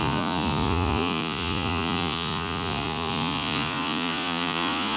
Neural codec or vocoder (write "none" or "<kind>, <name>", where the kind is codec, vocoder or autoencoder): vocoder, Vocos